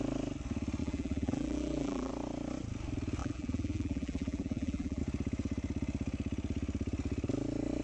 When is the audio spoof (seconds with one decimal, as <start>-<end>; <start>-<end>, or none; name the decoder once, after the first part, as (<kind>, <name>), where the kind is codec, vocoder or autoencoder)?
0.8-2.1 (vocoder, BigVGAN v2); 3.2-5.0